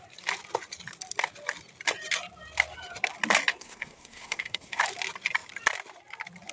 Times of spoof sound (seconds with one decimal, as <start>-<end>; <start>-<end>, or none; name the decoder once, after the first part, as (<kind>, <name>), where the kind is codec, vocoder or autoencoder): 3.5-4.8 (codec, SNAC)